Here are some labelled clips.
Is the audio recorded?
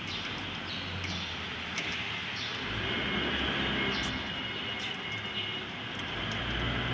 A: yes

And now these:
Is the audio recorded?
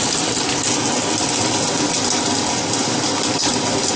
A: yes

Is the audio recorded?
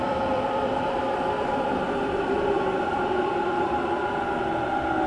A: no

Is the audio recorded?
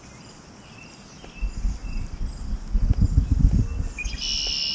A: yes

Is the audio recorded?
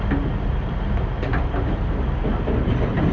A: yes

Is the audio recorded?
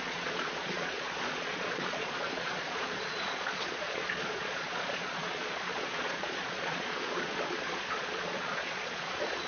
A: no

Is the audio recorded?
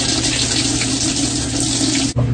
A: yes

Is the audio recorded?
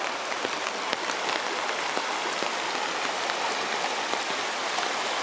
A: yes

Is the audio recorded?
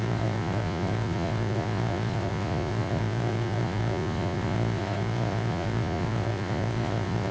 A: no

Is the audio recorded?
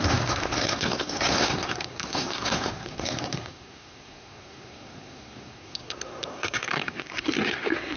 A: no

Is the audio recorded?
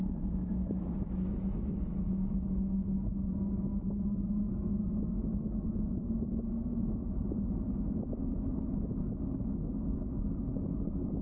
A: no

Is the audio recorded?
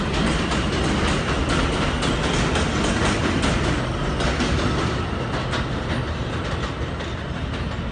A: yes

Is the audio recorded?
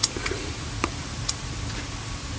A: yes